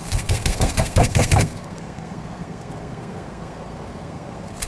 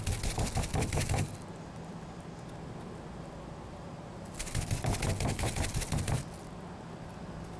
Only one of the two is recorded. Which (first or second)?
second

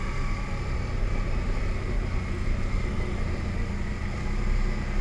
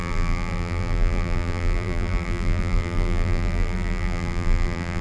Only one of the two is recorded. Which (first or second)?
first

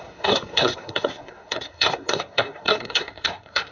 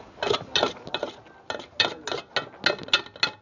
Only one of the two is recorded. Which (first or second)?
second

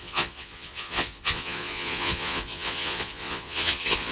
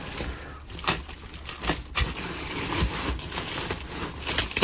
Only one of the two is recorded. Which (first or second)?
second